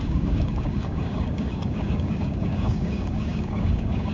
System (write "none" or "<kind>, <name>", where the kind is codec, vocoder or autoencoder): codec, DAC